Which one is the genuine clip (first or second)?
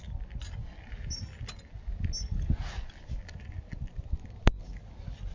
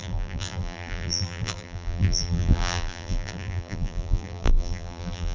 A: first